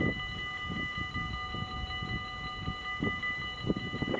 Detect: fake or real real